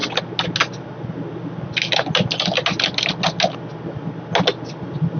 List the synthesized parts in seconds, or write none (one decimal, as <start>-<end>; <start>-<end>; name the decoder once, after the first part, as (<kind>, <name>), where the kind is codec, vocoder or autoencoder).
none